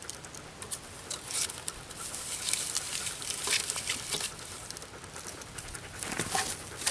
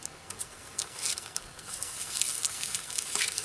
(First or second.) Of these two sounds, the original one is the first